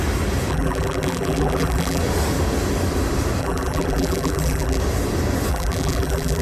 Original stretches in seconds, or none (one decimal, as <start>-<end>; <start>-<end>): 0.0-0.5; 2.0-3.4; 4.8-5.5